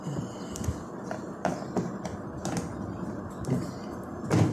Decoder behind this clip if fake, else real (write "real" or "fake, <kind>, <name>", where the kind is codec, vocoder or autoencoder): real